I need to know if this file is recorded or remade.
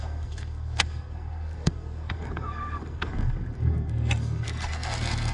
remade